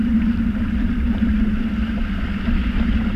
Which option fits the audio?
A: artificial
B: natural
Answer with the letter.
B